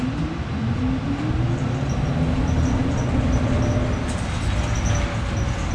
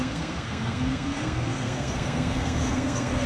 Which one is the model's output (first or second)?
second